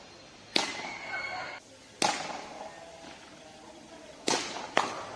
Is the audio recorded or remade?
recorded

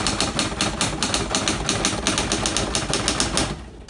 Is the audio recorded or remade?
recorded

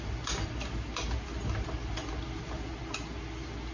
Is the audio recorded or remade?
recorded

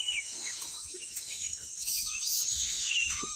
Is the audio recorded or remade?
remade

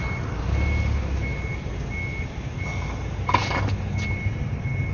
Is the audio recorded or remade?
recorded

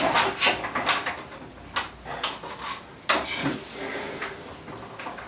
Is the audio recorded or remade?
recorded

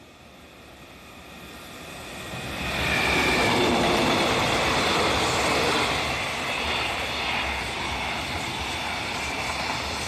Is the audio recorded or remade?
recorded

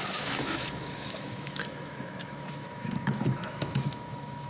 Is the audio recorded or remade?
remade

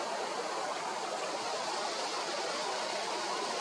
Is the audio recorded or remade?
recorded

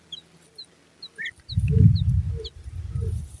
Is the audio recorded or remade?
recorded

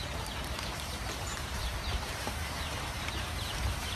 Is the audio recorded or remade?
remade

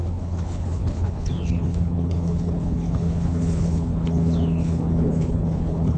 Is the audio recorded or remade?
remade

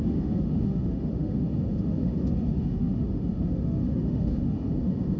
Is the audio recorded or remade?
remade